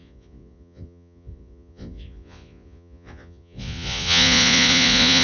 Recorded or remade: remade